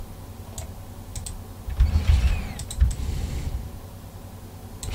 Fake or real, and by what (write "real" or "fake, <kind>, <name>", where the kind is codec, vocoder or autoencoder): real